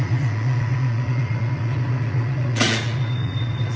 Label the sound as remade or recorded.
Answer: remade